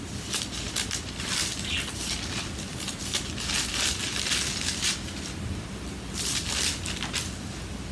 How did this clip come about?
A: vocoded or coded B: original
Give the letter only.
B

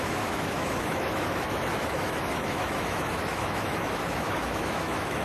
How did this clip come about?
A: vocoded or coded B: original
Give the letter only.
A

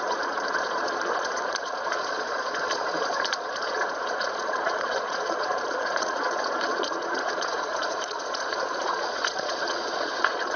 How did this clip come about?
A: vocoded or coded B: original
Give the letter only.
A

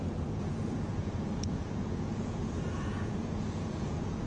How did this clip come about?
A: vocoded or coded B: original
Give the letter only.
A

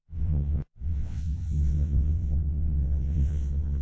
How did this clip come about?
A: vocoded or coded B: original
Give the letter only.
A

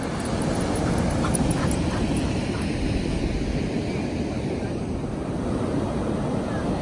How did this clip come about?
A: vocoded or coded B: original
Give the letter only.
B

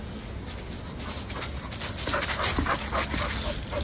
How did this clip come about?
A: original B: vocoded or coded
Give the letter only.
A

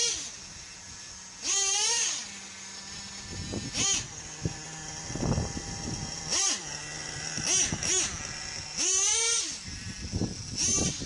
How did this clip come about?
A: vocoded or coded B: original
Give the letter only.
B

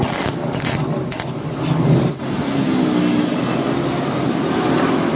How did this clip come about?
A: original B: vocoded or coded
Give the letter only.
A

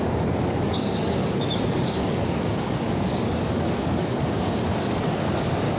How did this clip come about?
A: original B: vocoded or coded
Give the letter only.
B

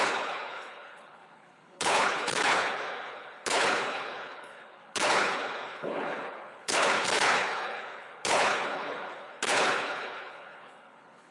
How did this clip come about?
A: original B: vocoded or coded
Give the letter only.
B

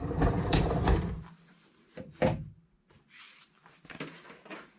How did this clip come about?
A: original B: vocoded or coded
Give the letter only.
B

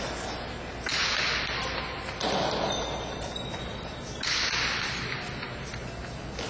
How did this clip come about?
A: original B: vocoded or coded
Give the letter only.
A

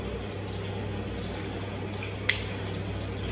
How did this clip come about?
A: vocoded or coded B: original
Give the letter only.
B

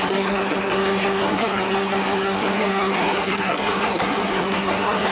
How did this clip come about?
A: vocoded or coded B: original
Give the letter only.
A